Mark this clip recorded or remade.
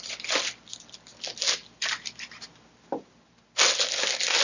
recorded